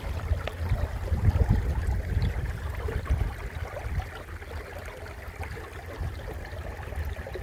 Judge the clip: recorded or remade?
recorded